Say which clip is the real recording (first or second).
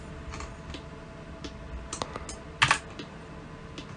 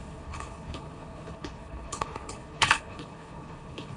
first